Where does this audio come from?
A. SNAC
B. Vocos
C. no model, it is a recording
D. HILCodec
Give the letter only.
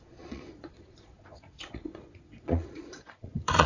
B